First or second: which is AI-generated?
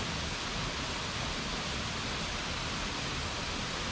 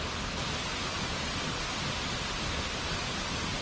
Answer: second